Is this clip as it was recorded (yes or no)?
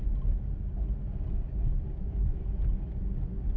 yes